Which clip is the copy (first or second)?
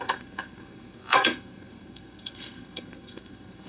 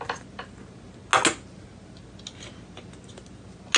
first